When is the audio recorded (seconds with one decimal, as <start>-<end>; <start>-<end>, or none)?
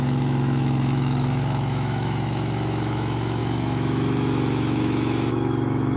none